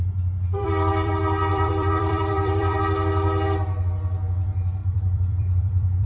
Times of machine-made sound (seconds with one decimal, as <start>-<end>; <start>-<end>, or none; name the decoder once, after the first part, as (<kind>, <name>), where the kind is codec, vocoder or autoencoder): 0.5-1.1 (vocoder, BigVGAN v2); 1.5-2.8; 4.8-6.1